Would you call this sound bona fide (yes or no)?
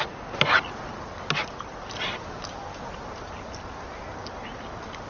yes